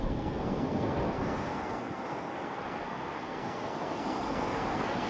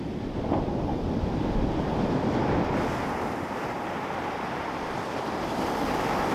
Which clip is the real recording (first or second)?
second